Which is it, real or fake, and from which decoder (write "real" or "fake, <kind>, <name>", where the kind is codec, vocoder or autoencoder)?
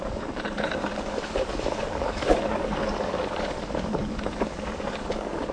fake, codec, DAC